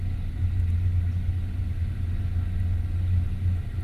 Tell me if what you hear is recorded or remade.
recorded